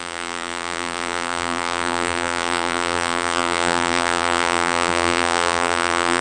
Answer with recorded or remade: remade